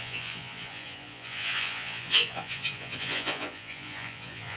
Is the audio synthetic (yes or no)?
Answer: yes